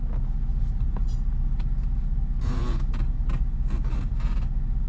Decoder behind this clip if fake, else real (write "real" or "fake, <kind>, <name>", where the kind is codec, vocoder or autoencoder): real